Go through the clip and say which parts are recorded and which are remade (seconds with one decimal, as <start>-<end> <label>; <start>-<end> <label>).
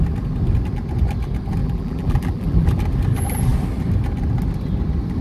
0.0-1.6 recorded; 1.6-2.8 remade; 2.8-5.2 recorded